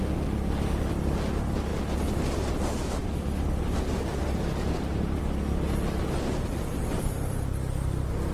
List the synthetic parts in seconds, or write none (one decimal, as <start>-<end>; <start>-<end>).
3.0-3.6; 4.1-5.2